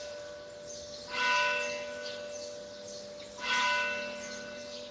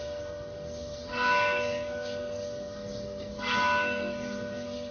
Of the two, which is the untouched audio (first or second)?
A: first